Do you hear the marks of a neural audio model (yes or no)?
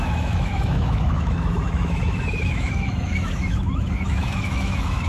yes